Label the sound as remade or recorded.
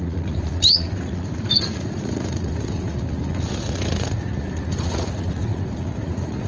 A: remade